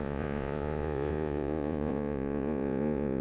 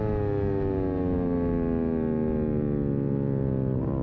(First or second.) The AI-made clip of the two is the first